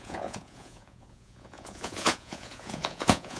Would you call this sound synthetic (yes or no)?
yes